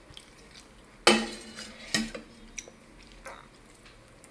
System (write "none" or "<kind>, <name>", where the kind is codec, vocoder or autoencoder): none